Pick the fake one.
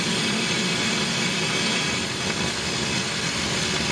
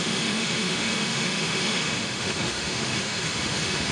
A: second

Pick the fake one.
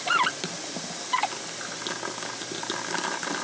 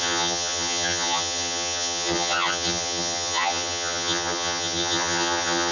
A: second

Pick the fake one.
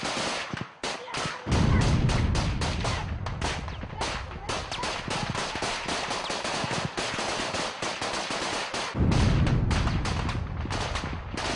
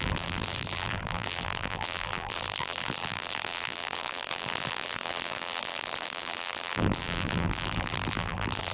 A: second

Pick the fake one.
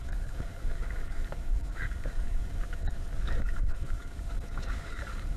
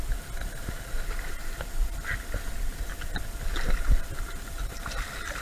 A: first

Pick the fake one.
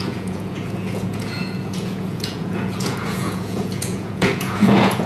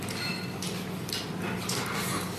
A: first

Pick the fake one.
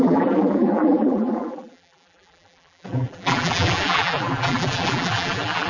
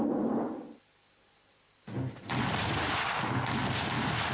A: first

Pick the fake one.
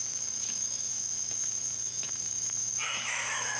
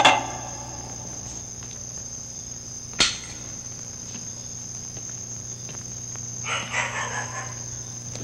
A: first